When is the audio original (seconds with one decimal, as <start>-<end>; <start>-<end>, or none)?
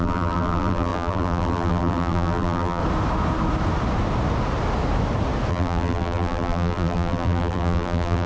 2.8-5.5